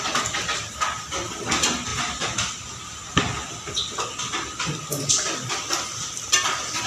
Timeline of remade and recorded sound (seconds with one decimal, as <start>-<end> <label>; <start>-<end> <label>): 0.0-1.9 remade; 1.9-4.7 recorded; 4.7-6.9 remade